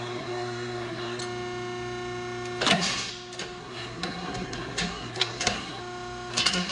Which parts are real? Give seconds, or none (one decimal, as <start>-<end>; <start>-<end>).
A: 1.2-2.7; 3.1-3.6; 5.8-6.3